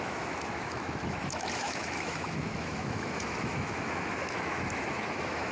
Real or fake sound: fake